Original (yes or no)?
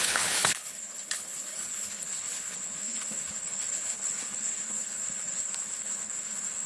no